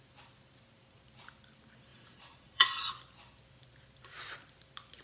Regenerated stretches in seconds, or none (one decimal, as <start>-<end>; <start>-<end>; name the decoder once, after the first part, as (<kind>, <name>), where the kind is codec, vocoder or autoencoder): 1.9-2.9 (vocoder, Vocos)